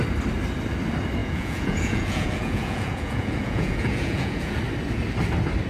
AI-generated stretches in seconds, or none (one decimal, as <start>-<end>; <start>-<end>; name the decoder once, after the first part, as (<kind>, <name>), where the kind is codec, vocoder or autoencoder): 1.2-4.6 (vocoder, Vocos)

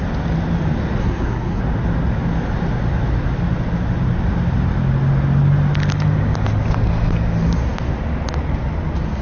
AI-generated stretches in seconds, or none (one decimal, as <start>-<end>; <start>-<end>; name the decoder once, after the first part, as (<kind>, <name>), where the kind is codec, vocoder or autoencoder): 1.0-1.6 (codec, SNAC)

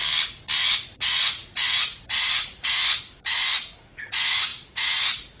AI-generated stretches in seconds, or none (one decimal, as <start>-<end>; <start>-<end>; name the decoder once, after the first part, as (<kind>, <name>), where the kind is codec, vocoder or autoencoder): 0.6-5.4 (vocoder, Vocos)

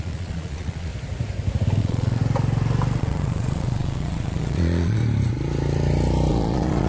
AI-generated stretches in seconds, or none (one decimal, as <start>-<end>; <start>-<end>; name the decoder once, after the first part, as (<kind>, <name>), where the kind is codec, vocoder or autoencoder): 0.0-0.9 (vocoder, Vocos); 1.8-2.2; 3.0-5.0; 6.3-6.9

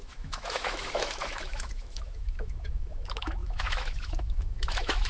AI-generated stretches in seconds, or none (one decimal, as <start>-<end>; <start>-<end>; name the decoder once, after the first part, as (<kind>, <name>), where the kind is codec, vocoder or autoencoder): 0.0-5.1 (autoencoder, DAC-VAE)

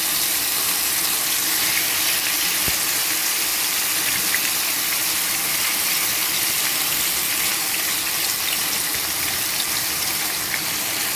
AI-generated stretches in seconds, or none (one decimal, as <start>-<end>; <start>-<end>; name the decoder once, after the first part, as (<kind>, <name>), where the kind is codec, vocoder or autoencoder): none

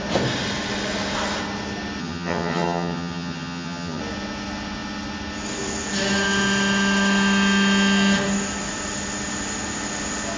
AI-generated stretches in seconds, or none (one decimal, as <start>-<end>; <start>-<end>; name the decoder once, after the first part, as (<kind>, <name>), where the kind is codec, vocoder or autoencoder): 2.0-4.0 (vocoder, HiFi-GAN)